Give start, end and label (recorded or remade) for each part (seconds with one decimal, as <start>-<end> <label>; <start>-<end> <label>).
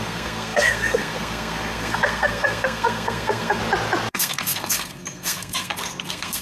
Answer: 0.0-3.6 remade; 3.6-4.1 recorded; 4.1-6.4 remade